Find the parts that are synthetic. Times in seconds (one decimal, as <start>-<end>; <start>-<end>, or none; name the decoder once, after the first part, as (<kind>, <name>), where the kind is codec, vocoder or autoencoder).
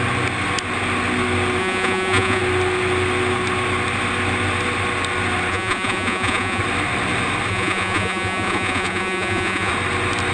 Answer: 1.6-2.4 (vocoder, Vocos); 5.5-6.6; 7.5-9.7